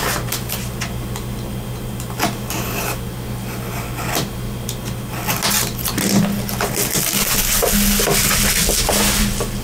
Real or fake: real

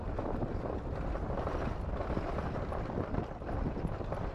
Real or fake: real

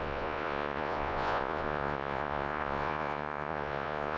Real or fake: fake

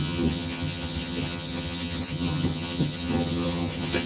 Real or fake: fake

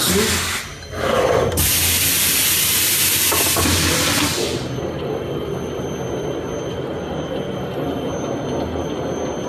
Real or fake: real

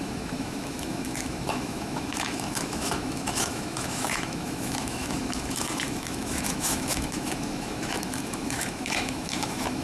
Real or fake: fake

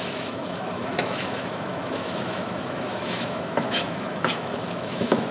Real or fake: fake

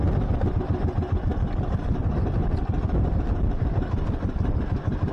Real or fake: real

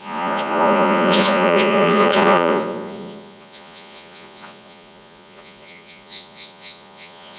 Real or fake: fake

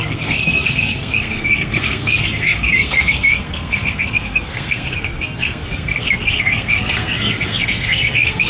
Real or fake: fake